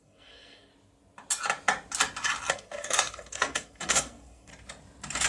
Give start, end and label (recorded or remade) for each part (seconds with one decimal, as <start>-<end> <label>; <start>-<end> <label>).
0.0-0.7 remade; 0.7-2.5 recorded; 2.5-4.5 remade; 4.5-5.3 recorded